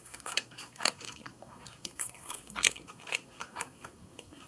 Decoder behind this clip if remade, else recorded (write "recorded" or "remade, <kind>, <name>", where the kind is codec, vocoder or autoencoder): remade, codec, SNAC